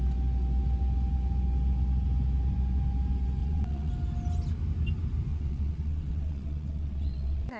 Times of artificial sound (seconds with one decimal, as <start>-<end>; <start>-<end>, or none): 3.4-3.9; 5.3-7.6